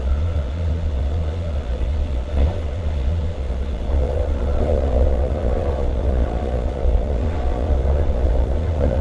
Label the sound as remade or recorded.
remade